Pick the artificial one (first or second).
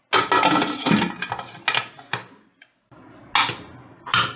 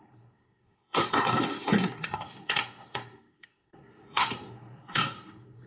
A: second